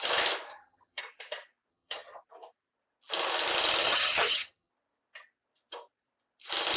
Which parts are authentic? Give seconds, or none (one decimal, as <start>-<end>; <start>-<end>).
0.0-0.5; 1.0-1.7; 2.2-3.8; 4.7-6.8